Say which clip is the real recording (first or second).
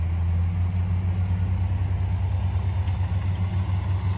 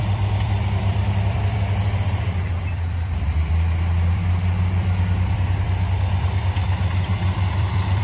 first